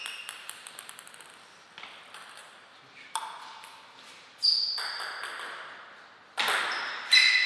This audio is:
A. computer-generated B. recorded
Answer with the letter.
B